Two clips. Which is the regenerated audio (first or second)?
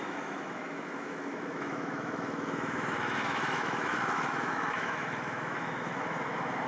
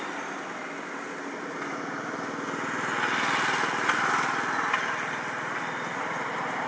first